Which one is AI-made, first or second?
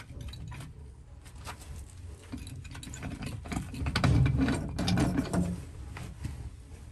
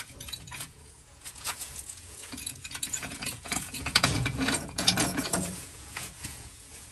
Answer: second